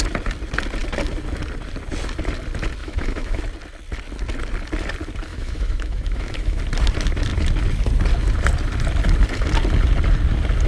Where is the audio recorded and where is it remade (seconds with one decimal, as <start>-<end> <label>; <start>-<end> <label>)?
0.0-2.8 recorded; 2.8-3.4 remade; 3.4-5.3 recorded; 5.3-6.6 remade; 6.6-10.7 recorded